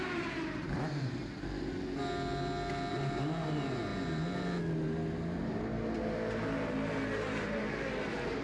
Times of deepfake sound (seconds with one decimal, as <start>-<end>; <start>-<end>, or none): 0.0-1.2; 2.9-3.9; 5.4-8.4